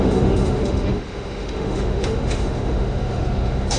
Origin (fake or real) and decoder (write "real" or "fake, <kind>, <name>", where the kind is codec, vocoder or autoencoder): fake, autoencoder, DAC-VAE